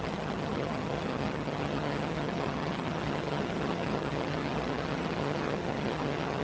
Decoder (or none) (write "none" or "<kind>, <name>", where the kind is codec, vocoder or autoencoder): vocoder, HiFi-GAN